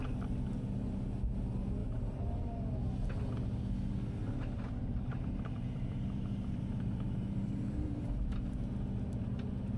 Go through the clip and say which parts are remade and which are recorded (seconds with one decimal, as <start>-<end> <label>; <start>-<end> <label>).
0.0-1.8 recorded; 1.8-2.5 remade; 2.5-4.2 recorded; 4.2-8.7 remade; 8.7-9.8 recorded